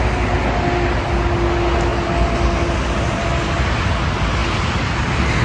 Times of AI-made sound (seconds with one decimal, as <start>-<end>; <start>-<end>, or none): none